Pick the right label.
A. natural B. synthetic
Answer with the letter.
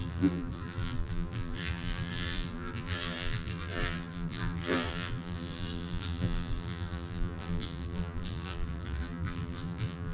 B